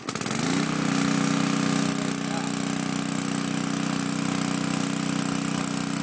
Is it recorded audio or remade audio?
recorded